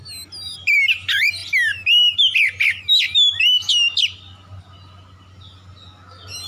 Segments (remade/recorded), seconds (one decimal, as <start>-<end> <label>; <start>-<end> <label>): 0.0-6.5 recorded